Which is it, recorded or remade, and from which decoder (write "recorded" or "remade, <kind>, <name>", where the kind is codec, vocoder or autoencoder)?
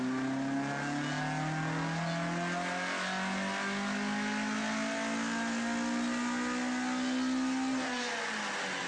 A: recorded